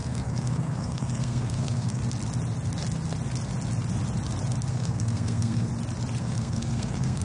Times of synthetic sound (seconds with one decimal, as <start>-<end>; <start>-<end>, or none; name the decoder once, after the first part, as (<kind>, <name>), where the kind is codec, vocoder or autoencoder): 0.0-2.0 (codec, SNAC); 4.7-5.7; 6.2-7.2